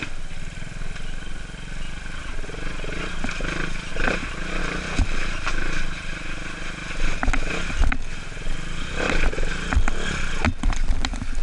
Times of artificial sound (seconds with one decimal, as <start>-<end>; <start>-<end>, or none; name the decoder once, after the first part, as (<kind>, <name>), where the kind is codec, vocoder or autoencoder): none